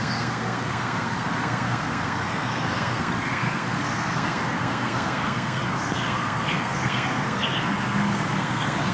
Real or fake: fake